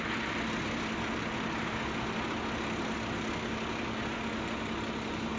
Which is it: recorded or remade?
recorded